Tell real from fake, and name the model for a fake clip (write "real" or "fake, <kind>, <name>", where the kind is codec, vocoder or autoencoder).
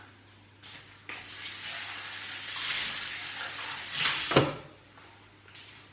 real